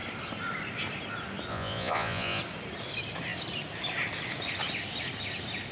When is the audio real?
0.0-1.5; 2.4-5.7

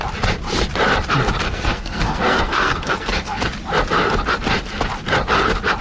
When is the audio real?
0.0-1.4; 3.4-5.8

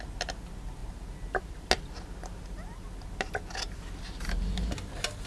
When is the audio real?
0.0-5.3

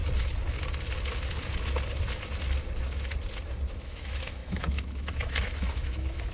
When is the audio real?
0.0-3.7

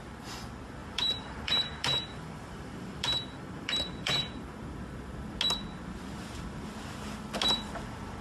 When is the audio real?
0.0-0.8; 4.3-8.2